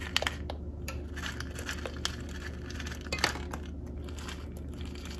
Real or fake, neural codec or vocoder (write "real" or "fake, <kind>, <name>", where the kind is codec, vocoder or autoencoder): real